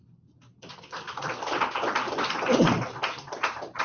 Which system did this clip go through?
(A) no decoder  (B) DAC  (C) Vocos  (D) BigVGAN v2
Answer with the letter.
A